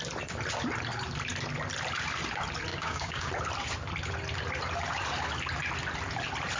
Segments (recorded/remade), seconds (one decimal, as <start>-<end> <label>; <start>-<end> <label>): 0.0-2.7 recorded; 2.7-3.3 remade; 3.3-6.6 recorded